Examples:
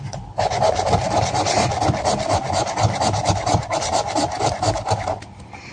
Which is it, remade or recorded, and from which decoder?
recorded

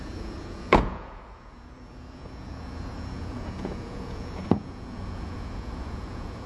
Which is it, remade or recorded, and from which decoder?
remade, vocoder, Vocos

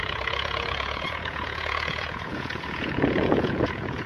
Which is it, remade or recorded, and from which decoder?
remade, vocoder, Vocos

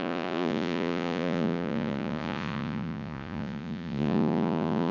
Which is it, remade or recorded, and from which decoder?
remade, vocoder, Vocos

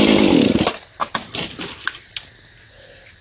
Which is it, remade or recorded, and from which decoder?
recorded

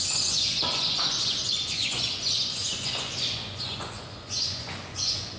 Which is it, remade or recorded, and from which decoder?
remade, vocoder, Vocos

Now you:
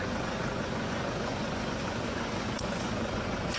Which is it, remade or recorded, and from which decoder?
remade, vocoder, Vocos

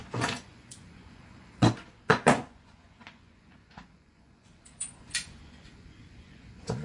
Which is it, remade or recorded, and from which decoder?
remade, vocoder, Vocos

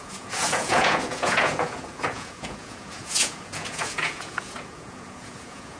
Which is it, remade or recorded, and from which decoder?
remade, vocoder, Vocos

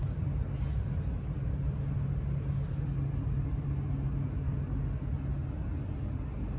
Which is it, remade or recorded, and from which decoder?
recorded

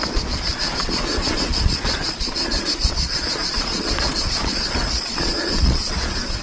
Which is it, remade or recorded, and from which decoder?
remade, vocoder, Vocos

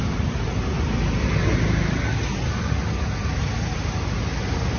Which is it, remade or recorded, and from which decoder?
recorded